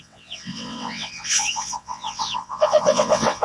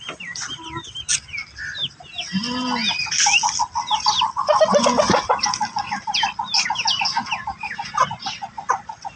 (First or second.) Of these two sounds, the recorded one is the second